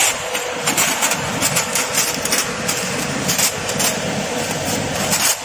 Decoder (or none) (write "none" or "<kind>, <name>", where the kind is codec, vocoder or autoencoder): vocoder, BigVGAN v2